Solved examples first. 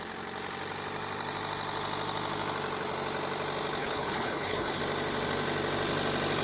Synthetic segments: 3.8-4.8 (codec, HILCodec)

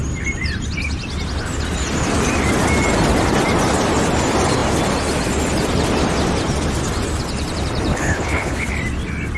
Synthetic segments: 7.9-8.7 (codec, HILCodec)

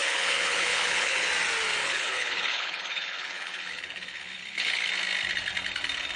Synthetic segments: 0.0-1.3 (codec, HILCodec); 1.8-4.9

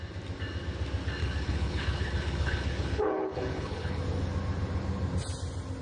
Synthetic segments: 1.2-4.0 (codec, HILCodec)